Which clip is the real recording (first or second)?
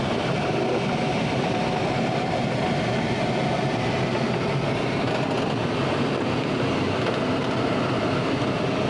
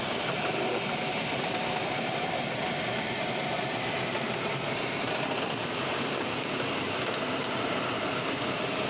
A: first